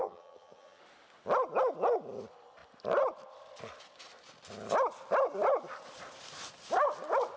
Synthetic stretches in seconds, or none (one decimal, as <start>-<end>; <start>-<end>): 0.0-0.8